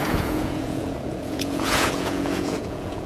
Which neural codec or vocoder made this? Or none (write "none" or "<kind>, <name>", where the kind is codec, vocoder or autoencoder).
vocoder, Vocos